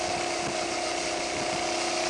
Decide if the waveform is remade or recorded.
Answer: recorded